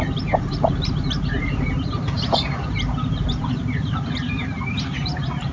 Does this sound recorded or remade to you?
remade